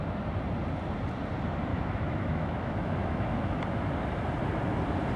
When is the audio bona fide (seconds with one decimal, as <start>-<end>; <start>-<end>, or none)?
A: 0.0-1.7; 3.6-5.2